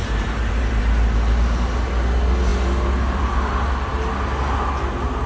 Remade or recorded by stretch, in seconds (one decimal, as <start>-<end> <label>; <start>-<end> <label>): 0.0-0.8 remade; 0.8-5.3 recorded